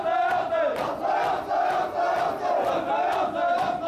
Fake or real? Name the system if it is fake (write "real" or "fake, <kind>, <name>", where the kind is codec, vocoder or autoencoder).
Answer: real